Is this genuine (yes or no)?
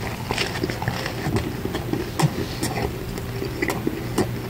yes